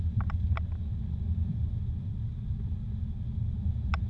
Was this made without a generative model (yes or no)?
yes